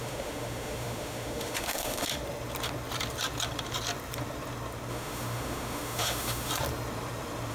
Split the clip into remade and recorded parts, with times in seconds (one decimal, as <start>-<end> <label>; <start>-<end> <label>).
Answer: 0.0-2.1 remade; 2.1-4.9 recorded; 4.9-6.5 remade; 6.5-7.5 recorded